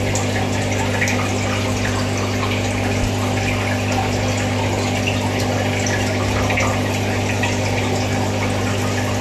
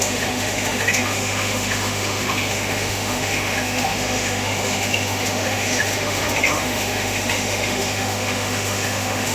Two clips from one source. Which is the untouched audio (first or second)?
first